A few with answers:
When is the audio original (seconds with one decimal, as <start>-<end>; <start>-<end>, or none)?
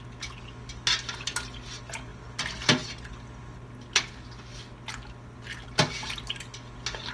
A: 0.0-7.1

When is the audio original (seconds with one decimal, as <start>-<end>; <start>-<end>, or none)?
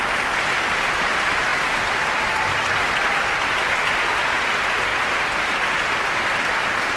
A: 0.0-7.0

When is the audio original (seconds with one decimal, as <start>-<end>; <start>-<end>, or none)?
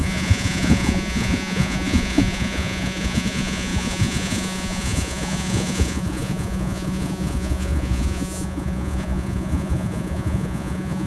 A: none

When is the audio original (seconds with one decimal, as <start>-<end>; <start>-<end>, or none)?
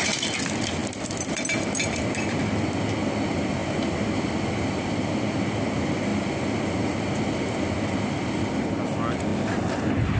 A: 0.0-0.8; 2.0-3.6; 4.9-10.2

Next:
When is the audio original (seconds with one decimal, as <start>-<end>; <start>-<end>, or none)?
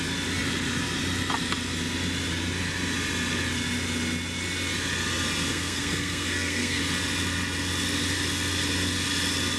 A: 0.0-5.5; 6.8-9.6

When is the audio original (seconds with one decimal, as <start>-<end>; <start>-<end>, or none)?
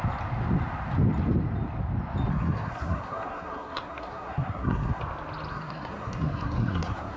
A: 0.0-2.3; 5.0-5.5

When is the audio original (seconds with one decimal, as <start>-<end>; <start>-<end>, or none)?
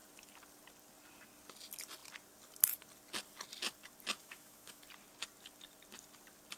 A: 0.0-4.2; 4.8-6.6